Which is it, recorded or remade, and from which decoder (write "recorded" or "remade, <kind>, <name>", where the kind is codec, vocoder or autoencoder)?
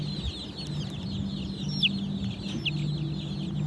recorded